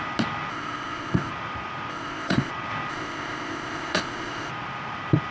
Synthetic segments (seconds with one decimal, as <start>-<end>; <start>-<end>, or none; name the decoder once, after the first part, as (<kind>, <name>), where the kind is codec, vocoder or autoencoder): 0.5-1.3 (codec, ZipCodec); 1.9-2.5; 2.9-4.5